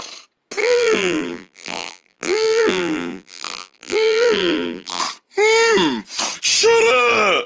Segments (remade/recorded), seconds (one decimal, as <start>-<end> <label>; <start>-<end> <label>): 0.0-0.6 recorded; 0.6-5.0 remade; 5.0-7.5 recorded